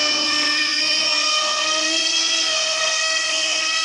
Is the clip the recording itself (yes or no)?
no